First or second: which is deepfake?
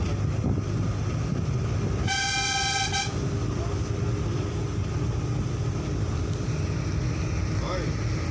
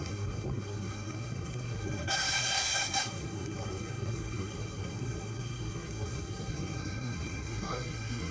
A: second